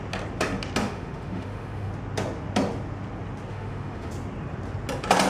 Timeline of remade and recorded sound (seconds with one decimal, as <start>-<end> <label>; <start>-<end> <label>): 0.0-0.8 recorded; 0.8-1.9 remade; 1.9-3.5 recorded; 3.5-4.1 remade; 4.1-5.3 recorded